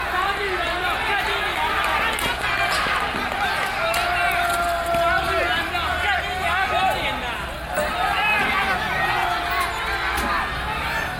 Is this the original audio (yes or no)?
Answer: yes